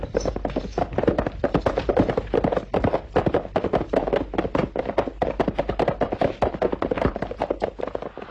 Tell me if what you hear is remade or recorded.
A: recorded